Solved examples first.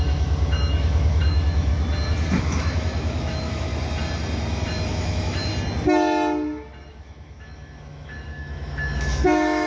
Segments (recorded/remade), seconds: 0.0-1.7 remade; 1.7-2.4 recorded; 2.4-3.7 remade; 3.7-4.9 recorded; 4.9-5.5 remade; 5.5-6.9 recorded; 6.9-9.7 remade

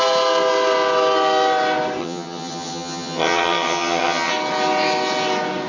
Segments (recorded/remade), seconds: 0.0-2.0 recorded; 2.0-4.3 remade; 4.3-5.7 recorded

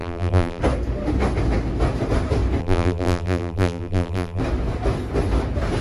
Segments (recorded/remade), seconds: 0.0-0.6 remade; 0.6-2.6 recorded; 2.6-4.4 remade; 4.4-5.8 recorded

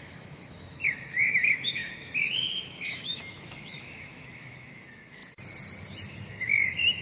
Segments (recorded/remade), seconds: 0.0-5.2 remade; 5.2-6.2 recorded; 6.2-7.0 remade

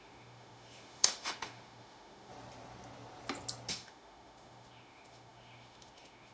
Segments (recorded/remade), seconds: 0.0-2.3 remade; 2.3-3.7 recorded; 3.7-6.3 remade

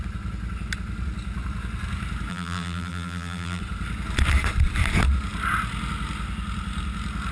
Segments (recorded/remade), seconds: 0.0-2.3 recorded; 2.3-3.6 remade; 3.6-7.3 recorded